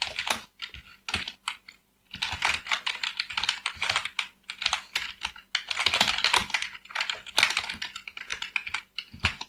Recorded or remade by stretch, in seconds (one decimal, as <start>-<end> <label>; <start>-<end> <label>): 0.0-0.9 recorded; 0.9-5.3 remade; 5.3-9.5 recorded